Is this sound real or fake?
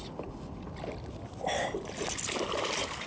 real